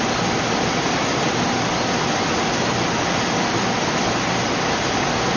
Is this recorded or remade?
recorded